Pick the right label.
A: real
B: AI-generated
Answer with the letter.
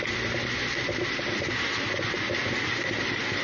A